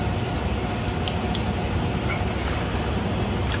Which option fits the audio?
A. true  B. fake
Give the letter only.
A